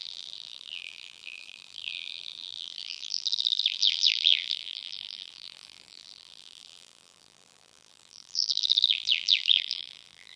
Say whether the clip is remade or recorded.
remade